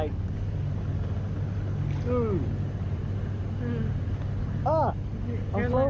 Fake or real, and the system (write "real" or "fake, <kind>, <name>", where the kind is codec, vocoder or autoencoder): real